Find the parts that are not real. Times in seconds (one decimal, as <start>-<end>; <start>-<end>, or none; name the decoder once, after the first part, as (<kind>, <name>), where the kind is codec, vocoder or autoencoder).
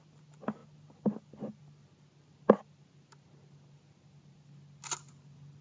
none